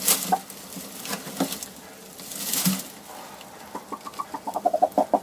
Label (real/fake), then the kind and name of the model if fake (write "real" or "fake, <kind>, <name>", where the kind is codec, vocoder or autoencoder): real